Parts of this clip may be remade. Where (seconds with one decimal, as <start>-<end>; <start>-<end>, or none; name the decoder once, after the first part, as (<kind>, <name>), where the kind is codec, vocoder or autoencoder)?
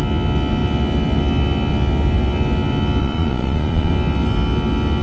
3.0-3.9 (vocoder, Vocos)